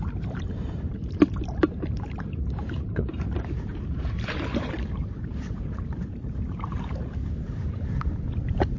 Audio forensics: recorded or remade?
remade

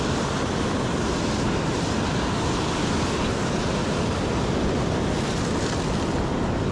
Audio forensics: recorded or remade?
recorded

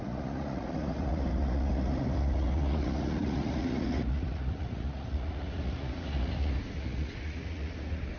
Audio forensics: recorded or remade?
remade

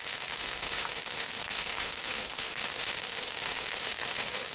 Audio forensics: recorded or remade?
remade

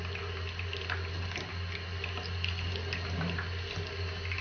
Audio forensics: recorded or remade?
recorded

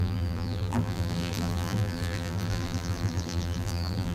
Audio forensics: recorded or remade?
remade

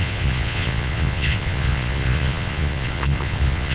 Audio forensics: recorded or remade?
remade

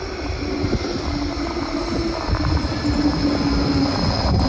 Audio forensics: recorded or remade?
recorded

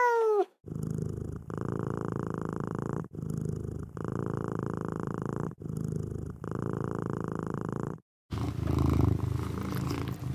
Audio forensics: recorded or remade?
recorded